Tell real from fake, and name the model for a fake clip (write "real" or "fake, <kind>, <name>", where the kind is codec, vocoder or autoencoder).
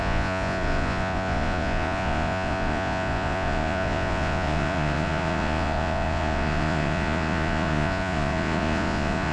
fake, vocoder, Vocos